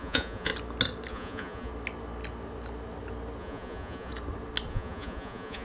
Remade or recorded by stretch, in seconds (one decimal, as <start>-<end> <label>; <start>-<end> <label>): 0.0-0.5 remade; 0.5-1.1 recorded; 1.1-1.7 remade; 1.7-3.4 recorded; 3.4-4.1 remade; 4.1-4.7 recorded; 4.7-5.6 remade